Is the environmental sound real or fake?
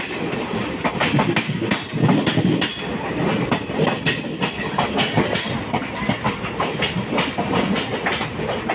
real